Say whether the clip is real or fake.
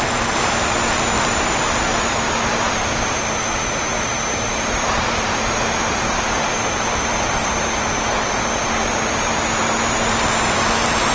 fake